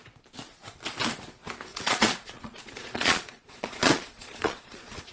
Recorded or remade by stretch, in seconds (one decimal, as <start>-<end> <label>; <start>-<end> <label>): 0.0-1.7 recorded; 1.7-5.1 remade

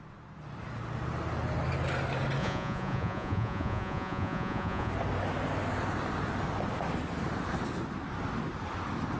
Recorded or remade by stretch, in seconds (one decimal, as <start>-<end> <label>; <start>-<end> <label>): 0.0-2.4 recorded; 2.4-4.9 remade; 4.9-9.2 recorded

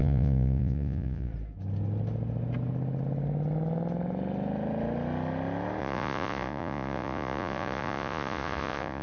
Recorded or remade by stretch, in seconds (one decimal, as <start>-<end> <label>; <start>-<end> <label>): 0.0-1.3 remade; 1.3-5.8 recorded; 5.8-9.0 remade

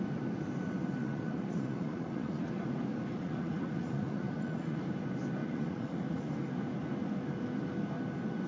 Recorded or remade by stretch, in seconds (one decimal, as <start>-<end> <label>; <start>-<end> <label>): 0.0-1.0 recorded; 1.0-2.5 remade; 2.5-3.1 recorded; 3.1-4.8 remade; 4.8-5.4 recorded; 5.4-6.3 remade; 6.3-8.5 recorded

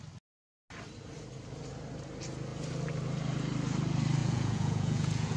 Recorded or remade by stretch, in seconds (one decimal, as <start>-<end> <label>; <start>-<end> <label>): 0.0-4.2 recorded; 4.2-5.4 remade

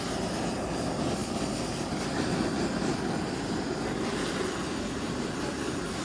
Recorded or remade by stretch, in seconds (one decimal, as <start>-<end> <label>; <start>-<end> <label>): 0.0-6.0 recorded

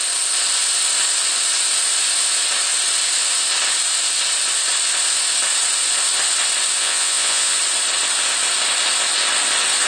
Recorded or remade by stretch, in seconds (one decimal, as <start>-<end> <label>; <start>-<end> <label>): 0.0-6.8 recorded; 6.8-7.6 remade; 7.6-9.9 recorded